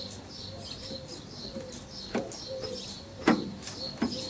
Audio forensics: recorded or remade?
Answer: recorded